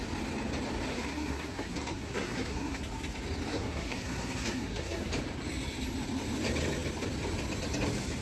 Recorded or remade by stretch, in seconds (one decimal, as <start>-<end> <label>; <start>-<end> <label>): 0.0-0.9 recorded; 0.9-2.8 remade; 2.8-3.5 recorded; 3.5-5.1 remade; 5.1-8.2 recorded